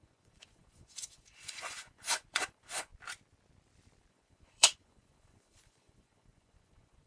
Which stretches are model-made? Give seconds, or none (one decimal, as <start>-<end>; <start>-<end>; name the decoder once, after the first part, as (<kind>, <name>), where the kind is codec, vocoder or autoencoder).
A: 0.0-2.9 (vocoder, Vocos); 4.1-7.1